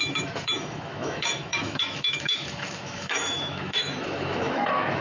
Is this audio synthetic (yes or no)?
yes